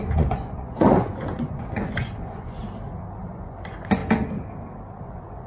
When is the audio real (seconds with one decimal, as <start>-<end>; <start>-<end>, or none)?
2.6-3.2; 4.0-5.0